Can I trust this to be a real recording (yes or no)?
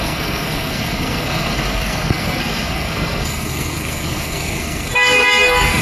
no